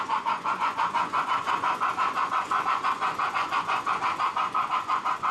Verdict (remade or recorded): remade